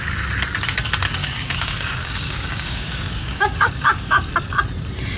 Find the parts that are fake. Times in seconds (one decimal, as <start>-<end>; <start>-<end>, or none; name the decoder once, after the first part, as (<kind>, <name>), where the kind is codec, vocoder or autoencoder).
1.2-4.3 (codec, DAC)

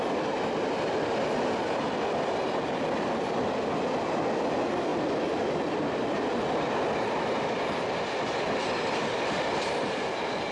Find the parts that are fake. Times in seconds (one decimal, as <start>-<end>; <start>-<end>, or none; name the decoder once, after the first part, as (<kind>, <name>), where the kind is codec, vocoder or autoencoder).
none

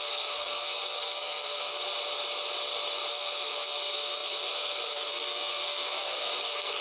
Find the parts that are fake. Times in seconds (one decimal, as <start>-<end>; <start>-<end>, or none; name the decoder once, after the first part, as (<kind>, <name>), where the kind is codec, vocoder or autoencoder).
0.0-1.8 (codec, SNAC); 3.1-6.8

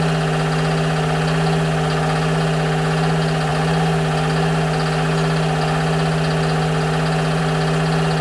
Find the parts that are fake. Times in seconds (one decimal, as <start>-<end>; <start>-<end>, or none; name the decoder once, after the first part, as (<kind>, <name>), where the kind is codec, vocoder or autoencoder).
none